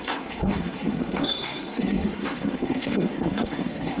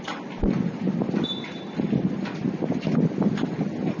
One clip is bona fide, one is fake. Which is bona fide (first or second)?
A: second